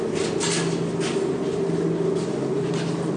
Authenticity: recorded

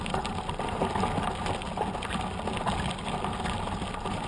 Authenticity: recorded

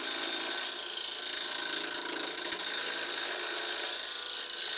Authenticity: recorded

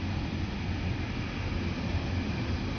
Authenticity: recorded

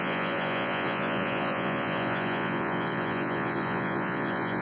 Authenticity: remade